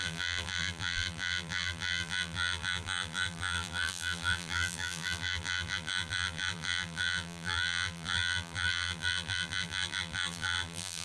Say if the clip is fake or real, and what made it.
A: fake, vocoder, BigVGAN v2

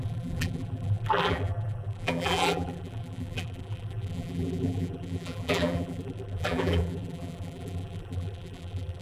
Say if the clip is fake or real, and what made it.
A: fake, vocoder, BigVGAN v2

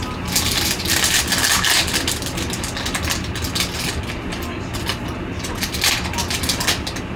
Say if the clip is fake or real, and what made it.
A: real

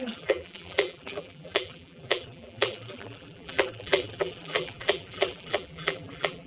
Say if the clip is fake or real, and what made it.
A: fake, vocoder, BigVGAN v2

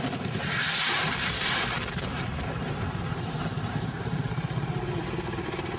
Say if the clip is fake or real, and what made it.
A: fake, vocoder, BigVGAN v2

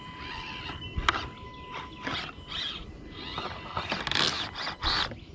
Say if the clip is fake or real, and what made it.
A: real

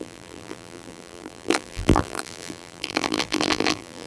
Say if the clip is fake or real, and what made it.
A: fake, vocoder, BigVGAN v2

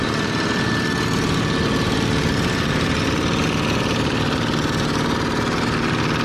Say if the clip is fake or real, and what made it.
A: real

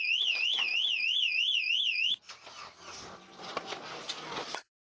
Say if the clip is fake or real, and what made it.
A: real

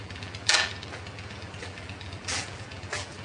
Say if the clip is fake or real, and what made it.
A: fake, vocoder, BigVGAN v2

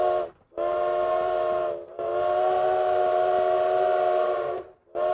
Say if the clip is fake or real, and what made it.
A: real